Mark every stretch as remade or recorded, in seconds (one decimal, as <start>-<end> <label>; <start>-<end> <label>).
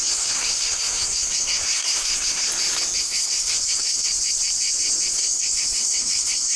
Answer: 0.0-2.5 remade; 2.5-3.0 recorded; 3.0-4.1 remade; 4.1-5.1 recorded; 5.1-6.6 remade